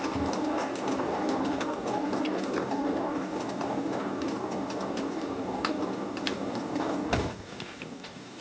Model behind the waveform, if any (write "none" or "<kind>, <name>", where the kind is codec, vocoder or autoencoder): codec, DAC